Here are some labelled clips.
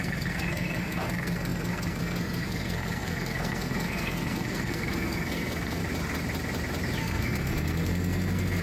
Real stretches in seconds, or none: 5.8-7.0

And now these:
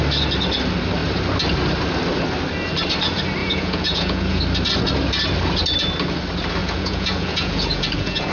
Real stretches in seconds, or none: 0.0-3.4; 4.4-6.6

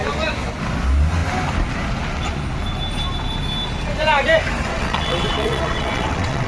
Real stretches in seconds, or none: 0.0-4.7

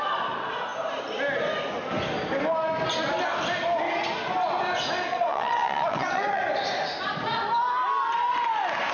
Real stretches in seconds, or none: 0.0-5.1; 6.4-8.9

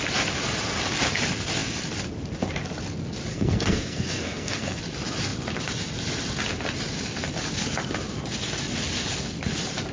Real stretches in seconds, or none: 0.0-3.3; 4.8-9.9

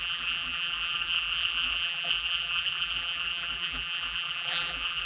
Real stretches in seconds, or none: none

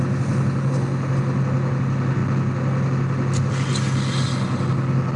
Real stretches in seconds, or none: 0.0-5.2